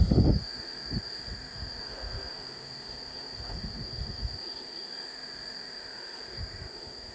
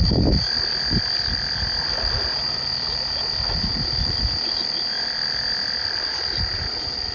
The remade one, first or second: first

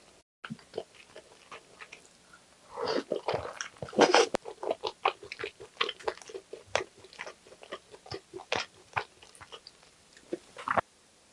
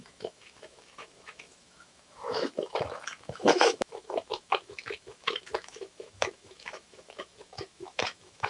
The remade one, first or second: second